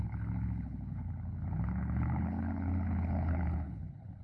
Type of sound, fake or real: fake